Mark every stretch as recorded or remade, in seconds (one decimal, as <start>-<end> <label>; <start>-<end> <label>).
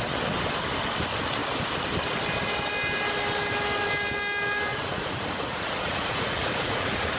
0.0-4.7 recorded; 4.7-7.2 remade